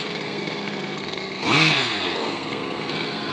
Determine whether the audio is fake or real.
fake